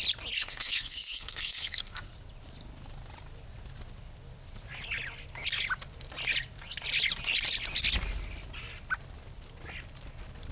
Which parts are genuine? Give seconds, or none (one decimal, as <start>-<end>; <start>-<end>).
0.0-0.4; 2.1-10.5